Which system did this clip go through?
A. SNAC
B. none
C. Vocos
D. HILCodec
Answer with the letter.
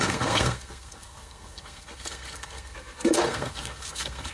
A